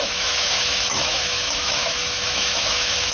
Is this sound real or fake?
fake